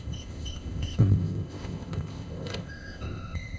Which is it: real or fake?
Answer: fake